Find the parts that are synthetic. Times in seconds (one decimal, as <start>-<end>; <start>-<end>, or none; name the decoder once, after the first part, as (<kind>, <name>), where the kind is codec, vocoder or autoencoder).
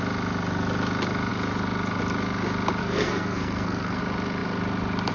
2.8-4.0 (codec, SNAC)